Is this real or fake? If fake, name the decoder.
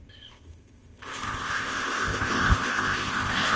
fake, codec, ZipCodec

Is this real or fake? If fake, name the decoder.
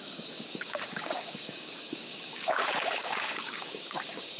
fake, codec, DAC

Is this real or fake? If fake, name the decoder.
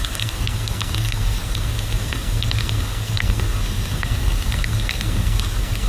fake, codec, SNAC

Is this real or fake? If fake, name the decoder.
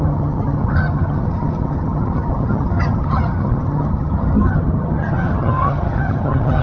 fake, vocoder, HiFi-GAN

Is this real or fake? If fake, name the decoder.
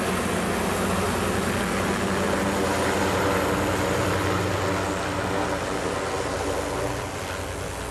real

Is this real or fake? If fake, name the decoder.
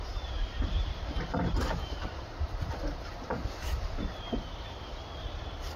fake, vocoder, BigVGAN v2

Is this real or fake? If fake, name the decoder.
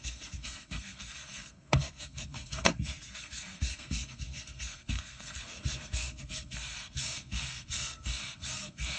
fake, codec, SNAC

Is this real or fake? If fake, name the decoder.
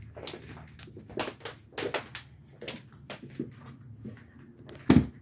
real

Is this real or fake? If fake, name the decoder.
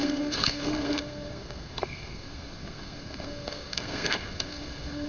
fake, codec, SNAC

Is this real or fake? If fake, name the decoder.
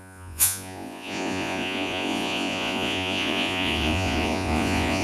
fake, vocoder, Vocos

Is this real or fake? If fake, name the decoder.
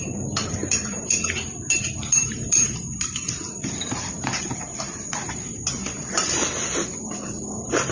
fake, vocoder, BigVGAN v2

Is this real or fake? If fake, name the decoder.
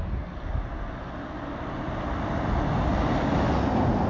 real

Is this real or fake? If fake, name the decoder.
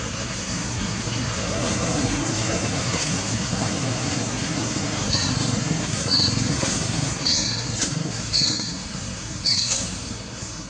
fake, codec, SNAC